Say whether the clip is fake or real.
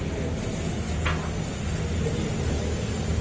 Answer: real